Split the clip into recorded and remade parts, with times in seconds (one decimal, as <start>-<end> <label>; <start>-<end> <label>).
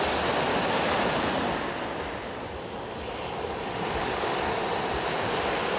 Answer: 0.0-4.0 recorded; 4.0-4.6 remade; 4.6-5.8 recorded